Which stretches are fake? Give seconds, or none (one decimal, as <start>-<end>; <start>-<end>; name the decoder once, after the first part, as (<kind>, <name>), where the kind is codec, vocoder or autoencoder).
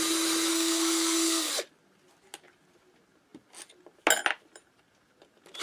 0.5-1.5 (codec, SNAC)